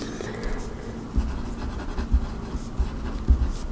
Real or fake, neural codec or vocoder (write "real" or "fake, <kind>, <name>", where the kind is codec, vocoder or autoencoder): real